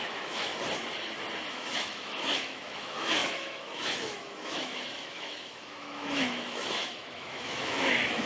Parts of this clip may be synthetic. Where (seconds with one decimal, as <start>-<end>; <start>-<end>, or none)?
0.0-0.5; 1.5-8.3